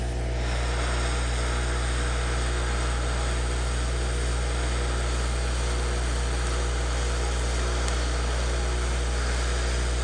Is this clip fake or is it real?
real